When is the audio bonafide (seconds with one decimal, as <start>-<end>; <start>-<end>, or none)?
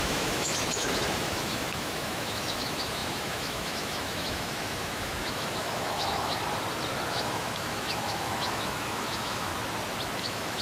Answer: 6.4-7.1; 9.5-10.2